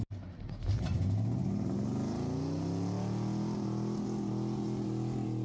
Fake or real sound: real